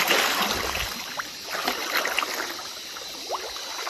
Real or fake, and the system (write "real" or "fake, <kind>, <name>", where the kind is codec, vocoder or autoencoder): real